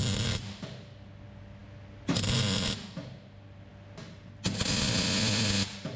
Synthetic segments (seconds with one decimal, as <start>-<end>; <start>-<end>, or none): none